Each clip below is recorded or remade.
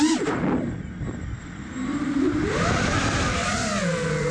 recorded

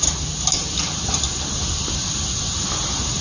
recorded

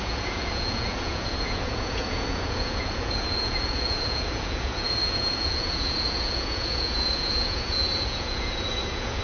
remade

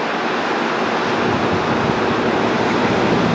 recorded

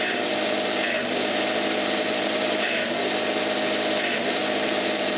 remade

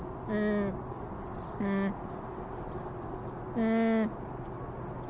recorded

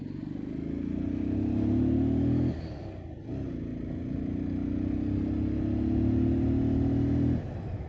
recorded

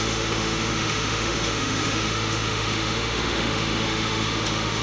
remade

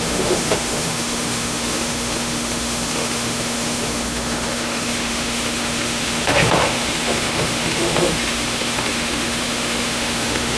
remade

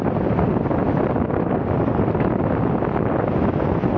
recorded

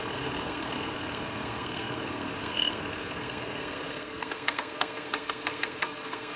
remade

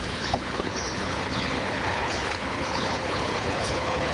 remade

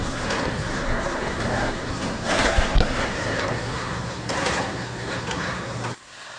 remade